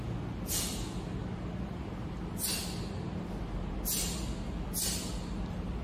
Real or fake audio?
real